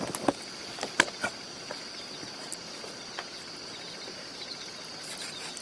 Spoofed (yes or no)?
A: no